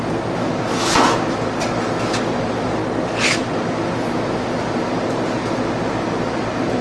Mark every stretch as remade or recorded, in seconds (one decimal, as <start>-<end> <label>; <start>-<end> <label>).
0.0-6.8 recorded